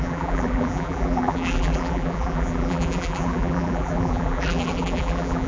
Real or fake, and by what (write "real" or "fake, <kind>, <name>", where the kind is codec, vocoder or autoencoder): fake, vocoder, BigVGAN v2